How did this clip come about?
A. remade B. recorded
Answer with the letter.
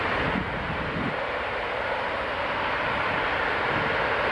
B